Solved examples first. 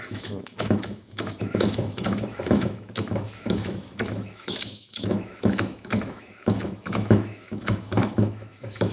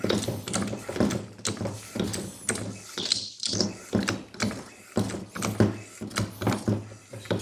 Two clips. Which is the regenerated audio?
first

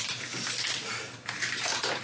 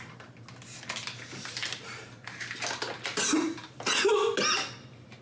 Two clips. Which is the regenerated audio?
first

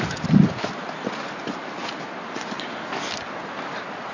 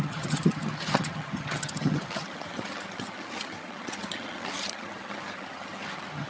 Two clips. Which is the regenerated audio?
second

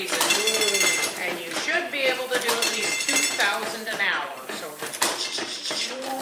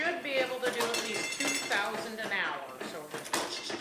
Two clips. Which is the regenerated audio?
first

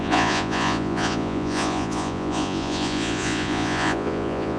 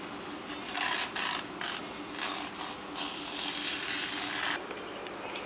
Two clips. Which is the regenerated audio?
first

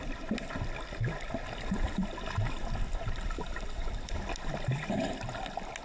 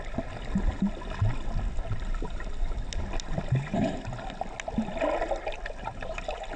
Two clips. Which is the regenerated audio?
first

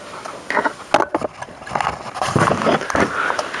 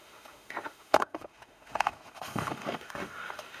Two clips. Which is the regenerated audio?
second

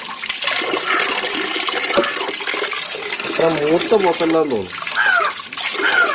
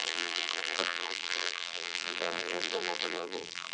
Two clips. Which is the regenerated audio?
second